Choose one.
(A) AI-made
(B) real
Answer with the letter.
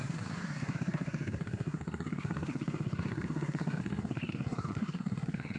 A